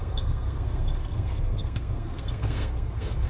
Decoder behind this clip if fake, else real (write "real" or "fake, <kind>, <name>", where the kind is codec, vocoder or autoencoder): fake, codec, SNAC